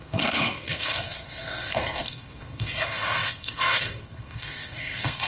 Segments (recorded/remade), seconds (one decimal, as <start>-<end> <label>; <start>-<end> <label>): 0.0-5.3 remade